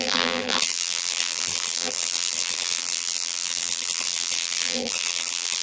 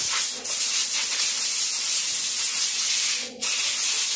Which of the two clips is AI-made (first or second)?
first